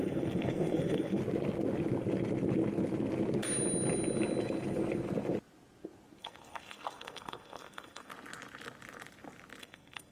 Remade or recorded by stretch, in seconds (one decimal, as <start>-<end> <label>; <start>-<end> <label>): 0.0-1.2 remade; 1.2-6.2 recorded; 6.2-8.1 remade; 8.1-9.6 recorded; 9.6-10.1 remade